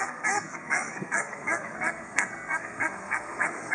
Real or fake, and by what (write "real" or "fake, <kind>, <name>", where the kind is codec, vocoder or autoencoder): fake, codec, SNAC